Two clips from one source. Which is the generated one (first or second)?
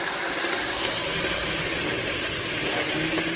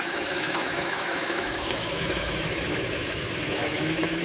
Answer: second